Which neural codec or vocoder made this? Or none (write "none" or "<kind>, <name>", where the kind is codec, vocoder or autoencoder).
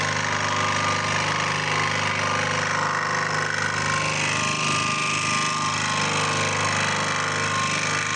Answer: none